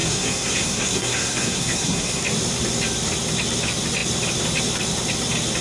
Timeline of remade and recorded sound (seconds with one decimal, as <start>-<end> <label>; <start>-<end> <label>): 0.0-2.2 remade; 2.2-5.6 recorded